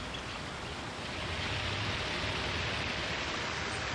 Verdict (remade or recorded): remade